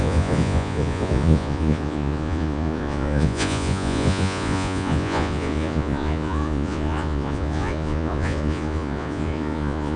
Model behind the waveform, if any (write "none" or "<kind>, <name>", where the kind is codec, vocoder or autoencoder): vocoder, Vocos